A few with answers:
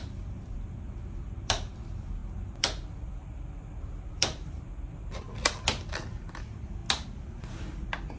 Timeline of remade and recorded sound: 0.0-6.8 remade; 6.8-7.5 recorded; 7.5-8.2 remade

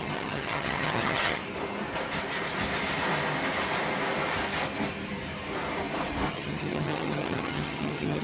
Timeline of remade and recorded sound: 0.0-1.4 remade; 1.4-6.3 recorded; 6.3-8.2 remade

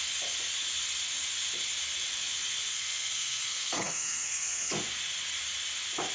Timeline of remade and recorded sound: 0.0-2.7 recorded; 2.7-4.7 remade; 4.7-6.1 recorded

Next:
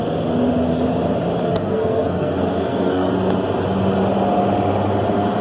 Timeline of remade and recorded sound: 0.0-1.4 recorded; 1.4-3.1 remade; 3.1-5.4 recorded

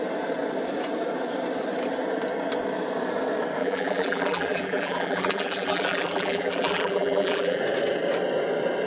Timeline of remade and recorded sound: 0.0-3.6 recorded; 3.6-7.6 remade; 7.6-8.9 recorded

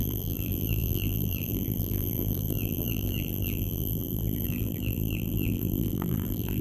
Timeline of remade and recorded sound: 0.0-6.6 remade

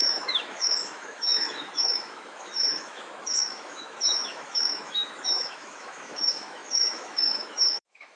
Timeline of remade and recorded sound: 0.0-8.2 remade

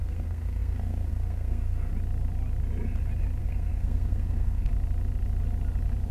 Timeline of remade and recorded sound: 0.0-1.9 remade; 1.9-3.4 recorded; 3.4-4.7 remade; 4.7-6.1 recorded